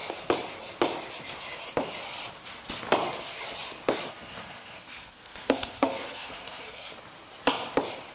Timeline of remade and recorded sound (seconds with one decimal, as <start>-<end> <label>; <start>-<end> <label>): 0.0-4.1 recorded; 4.1-6.9 remade; 6.9-8.1 recorded

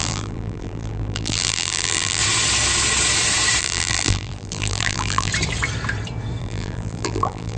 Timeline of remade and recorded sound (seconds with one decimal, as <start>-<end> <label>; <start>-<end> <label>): 0.0-2.2 remade; 2.2-3.6 recorded; 3.6-5.3 remade; 5.3-6.4 recorded; 6.4-7.6 remade

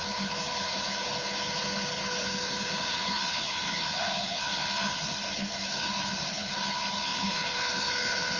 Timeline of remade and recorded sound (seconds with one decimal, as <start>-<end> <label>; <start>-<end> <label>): 0.0-8.4 remade

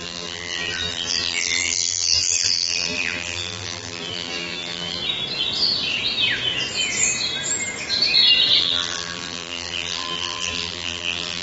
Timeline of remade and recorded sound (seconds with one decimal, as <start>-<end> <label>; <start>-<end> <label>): 0.0-5.0 remade; 5.0-8.6 recorded; 8.6-11.4 remade

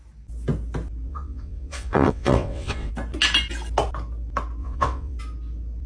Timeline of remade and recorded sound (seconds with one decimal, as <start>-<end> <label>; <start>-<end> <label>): 0.0-1.1 recorded; 1.1-2.9 remade; 2.9-4.6 recorded; 4.6-5.2 remade; 5.2-5.9 recorded

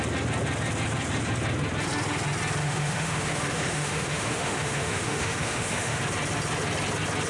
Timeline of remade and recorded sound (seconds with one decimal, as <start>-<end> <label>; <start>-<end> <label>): 0.0-2.6 recorded; 2.6-6.0 remade; 6.0-7.3 recorded

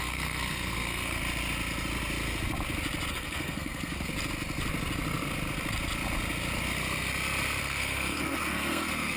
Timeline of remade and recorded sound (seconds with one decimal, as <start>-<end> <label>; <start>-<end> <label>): 0.0-1.2 remade; 1.2-3.1 recorded; 3.1-4.1 remade; 4.1-7.6 recorded; 7.6-9.2 remade

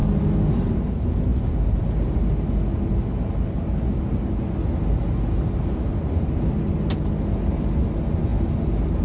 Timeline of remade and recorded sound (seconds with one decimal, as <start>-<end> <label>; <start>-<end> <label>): 0.0-9.0 recorded